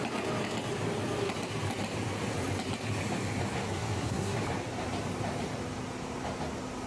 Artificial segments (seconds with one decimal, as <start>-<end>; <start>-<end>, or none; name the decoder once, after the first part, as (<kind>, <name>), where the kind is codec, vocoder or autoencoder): 3.7-4.4 (codec, SNAC)